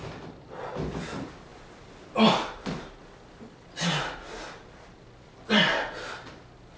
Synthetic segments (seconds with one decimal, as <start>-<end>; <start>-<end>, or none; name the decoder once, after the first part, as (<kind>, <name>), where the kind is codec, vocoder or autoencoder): none